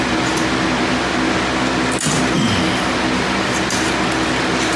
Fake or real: real